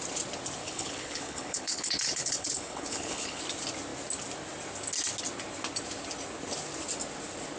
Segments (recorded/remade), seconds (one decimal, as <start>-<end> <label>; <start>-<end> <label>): 0.0-0.6 recorded; 0.6-3.4 remade; 3.4-7.6 recorded